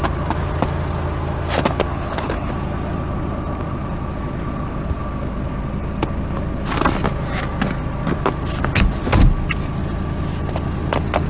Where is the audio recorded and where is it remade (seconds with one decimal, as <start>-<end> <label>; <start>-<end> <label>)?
0.0-1.9 recorded; 1.9-2.5 remade; 2.5-11.3 recorded